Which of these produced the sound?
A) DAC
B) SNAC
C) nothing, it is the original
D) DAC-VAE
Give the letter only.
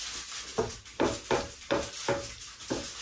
C